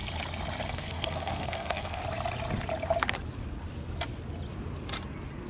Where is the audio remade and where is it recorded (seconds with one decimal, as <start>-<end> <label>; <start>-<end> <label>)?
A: 0.0-0.7 recorded; 0.7-2.0 remade; 2.0-5.5 recorded